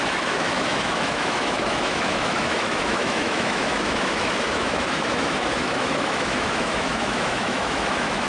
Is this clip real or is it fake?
fake